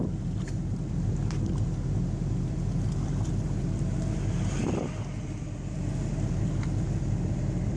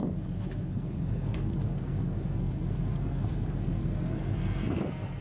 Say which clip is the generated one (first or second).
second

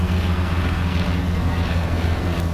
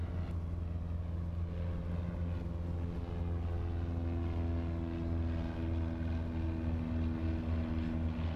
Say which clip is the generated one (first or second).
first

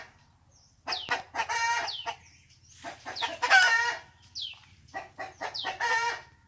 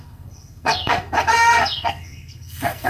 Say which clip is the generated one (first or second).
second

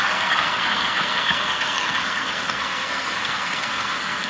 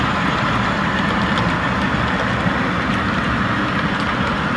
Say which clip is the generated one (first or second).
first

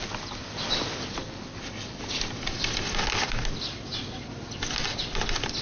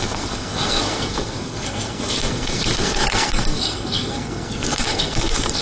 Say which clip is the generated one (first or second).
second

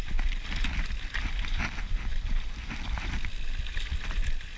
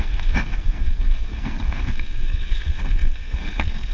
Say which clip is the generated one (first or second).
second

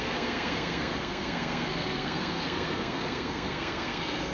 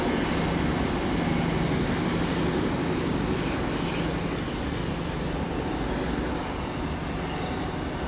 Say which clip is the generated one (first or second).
first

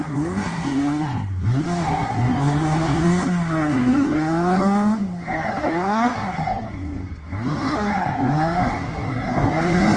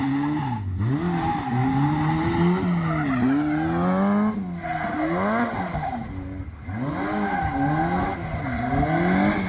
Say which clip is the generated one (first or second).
first